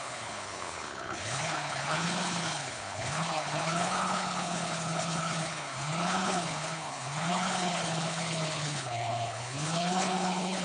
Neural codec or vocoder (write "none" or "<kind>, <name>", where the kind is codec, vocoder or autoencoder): codec, HILCodec